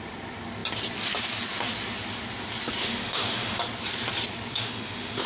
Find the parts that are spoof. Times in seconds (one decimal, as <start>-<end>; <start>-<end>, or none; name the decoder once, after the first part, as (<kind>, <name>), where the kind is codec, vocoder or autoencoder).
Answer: 2.8-3.6 (autoencoder, DAC-VAE); 4.5-5.3